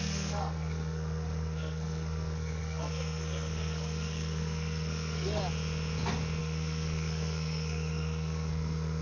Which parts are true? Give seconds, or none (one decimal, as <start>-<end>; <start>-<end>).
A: 5.4-6.4